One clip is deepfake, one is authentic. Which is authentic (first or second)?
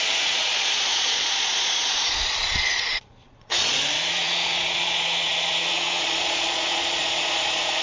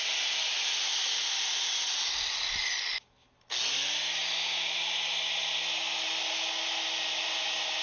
second